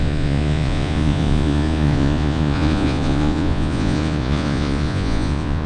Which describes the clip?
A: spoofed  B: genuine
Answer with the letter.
A